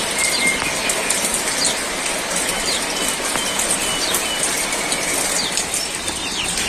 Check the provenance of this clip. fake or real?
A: real